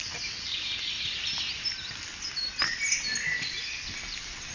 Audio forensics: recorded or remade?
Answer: recorded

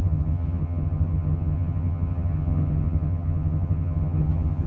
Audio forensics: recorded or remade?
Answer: remade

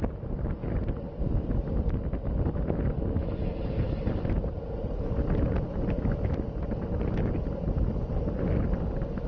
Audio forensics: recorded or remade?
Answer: recorded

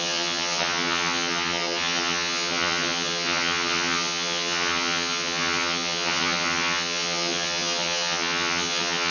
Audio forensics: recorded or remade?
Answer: remade